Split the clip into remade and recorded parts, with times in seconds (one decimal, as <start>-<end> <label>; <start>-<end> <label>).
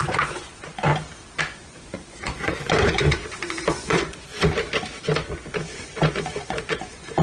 0.0-0.9 remade; 0.9-1.4 recorded; 1.4-4.3 remade; 4.3-5.5 recorded; 5.5-7.2 remade